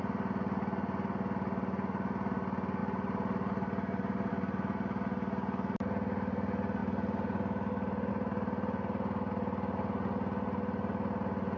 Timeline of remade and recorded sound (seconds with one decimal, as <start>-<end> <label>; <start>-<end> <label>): 0.0-2.8 recorded; 2.8-4.3 remade; 4.3-11.6 recorded